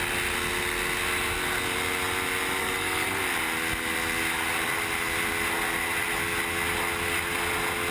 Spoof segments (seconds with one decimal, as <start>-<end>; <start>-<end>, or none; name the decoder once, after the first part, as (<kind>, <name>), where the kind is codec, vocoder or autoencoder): 2.6-3.2 (codec, SNAC)